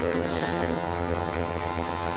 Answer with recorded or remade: remade